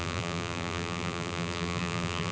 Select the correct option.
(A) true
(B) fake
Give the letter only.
B